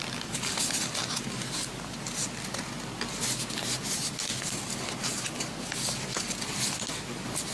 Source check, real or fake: real